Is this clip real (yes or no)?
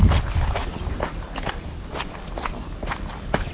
yes